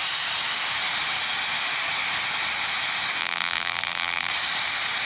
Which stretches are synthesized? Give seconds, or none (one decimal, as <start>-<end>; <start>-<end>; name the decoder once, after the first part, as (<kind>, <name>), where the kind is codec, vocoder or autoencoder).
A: 3.2-4.3 (vocoder, BigVGAN v2)